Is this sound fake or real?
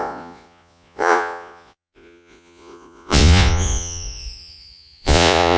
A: fake